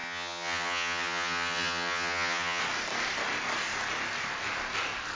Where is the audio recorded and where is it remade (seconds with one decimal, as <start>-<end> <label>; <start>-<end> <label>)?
0.0-2.6 remade; 2.6-5.1 recorded